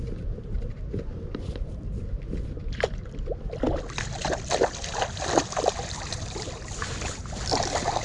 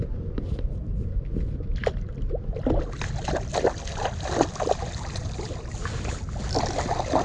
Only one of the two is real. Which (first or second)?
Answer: second